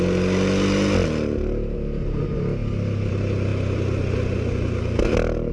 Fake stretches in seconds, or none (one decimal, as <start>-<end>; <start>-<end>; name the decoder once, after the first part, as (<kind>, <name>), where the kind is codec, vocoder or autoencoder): none